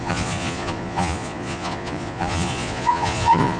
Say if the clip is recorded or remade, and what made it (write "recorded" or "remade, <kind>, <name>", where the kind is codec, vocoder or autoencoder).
remade, vocoder, Vocos